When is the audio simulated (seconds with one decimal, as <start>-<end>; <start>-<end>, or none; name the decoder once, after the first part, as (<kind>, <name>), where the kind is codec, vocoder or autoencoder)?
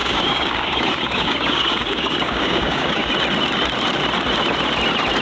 0.0-3.1 (codec, DAC)